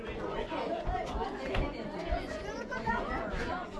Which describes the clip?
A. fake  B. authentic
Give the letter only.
A